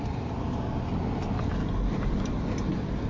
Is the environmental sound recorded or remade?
recorded